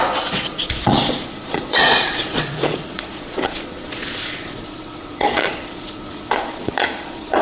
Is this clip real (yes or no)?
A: no